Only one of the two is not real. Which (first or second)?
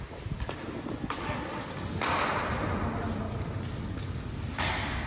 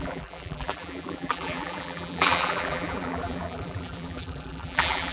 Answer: second